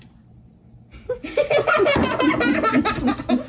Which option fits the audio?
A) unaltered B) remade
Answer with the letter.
A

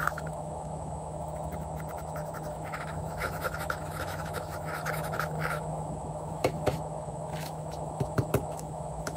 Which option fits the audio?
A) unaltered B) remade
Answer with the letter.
B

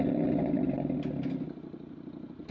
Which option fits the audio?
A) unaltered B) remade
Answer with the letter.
A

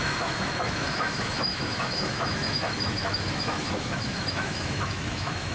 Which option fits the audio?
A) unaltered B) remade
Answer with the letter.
B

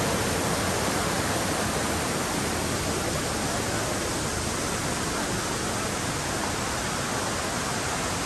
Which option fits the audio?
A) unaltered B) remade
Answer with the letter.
A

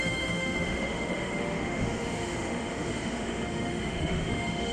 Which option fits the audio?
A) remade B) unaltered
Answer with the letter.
A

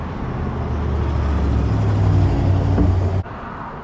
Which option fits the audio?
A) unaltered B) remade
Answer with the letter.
A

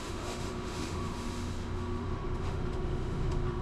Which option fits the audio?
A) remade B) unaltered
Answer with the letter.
A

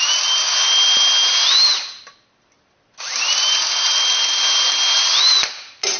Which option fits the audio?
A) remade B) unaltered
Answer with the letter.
B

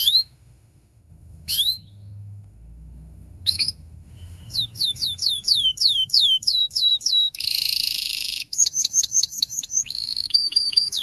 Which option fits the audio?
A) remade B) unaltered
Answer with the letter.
A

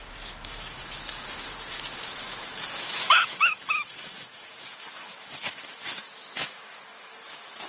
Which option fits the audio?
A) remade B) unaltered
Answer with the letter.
A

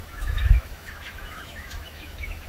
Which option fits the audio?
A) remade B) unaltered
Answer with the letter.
A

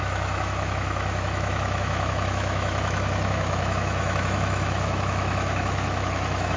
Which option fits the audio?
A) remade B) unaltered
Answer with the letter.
A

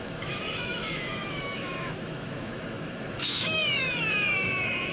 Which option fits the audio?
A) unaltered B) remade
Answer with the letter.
B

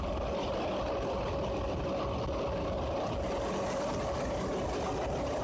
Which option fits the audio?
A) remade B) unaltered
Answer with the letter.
B